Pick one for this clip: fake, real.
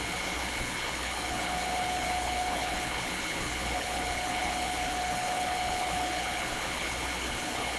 fake